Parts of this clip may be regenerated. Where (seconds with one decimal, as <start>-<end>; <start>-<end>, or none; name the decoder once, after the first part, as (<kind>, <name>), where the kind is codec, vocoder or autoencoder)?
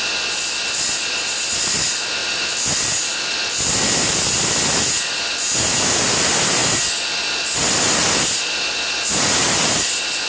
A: none